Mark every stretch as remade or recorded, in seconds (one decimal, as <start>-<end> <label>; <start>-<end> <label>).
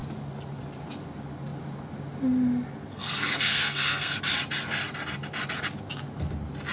0.0-2.9 recorded; 2.9-4.2 remade; 4.2-6.7 recorded